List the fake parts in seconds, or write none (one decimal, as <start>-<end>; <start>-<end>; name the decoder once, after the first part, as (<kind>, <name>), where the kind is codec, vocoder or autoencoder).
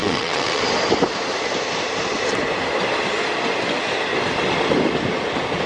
0.0-0.6 (vocoder, WaveNeXt)